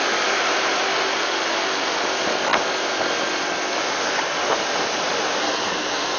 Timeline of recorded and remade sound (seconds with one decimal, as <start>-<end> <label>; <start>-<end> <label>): 0.0-5.4 recorded; 5.4-6.2 remade